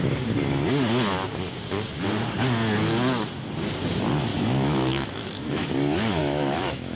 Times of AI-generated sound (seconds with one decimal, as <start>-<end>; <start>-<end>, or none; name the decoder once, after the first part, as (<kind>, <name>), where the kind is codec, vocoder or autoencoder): 4.3-5.7 (autoencoder, DAC-VAE); 6.2-7.0